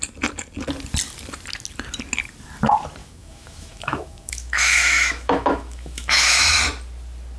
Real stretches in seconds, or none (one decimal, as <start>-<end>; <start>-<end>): 0.0-3.0; 6.6-7.4